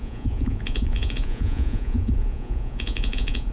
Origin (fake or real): fake